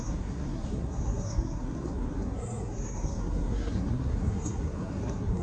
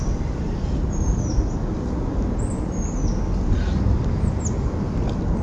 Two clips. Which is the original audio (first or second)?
second